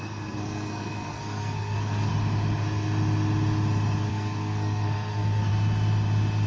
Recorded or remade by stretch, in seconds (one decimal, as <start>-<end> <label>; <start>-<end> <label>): 0.0-2.1 remade; 2.1-4.1 recorded; 4.1-5.5 remade; 5.5-6.5 recorded